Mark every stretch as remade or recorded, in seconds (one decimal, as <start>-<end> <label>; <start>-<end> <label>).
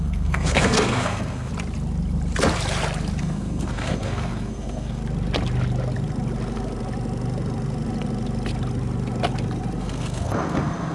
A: 0.0-1.5 remade; 1.5-3.2 recorded; 3.2-5.0 remade; 5.0-9.8 recorded; 9.8-10.9 remade